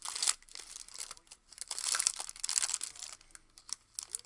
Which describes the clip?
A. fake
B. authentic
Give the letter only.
B